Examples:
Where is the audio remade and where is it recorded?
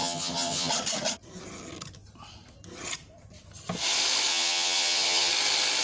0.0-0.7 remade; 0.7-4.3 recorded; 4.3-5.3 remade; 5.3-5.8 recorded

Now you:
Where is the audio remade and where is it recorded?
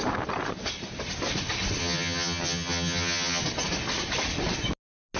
0.0-1.8 recorded; 1.8-3.4 remade; 3.4-5.2 recorded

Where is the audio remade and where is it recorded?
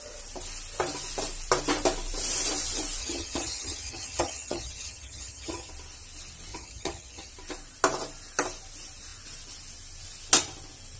0.0-3.0 recorded; 3.0-5.7 remade; 5.7-6.5 recorded; 6.5-7.3 remade; 7.3-11.0 recorded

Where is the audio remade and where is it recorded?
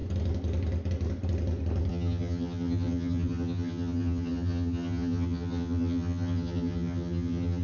0.0-1.9 recorded; 1.9-7.6 remade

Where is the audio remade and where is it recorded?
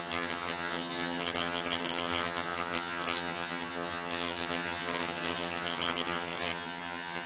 0.0-7.3 remade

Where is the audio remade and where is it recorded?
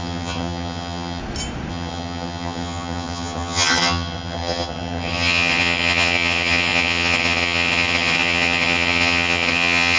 0.0-1.2 remade; 1.2-1.7 recorded; 1.7-10.0 remade